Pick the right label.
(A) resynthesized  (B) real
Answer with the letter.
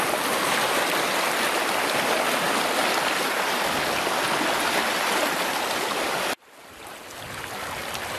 B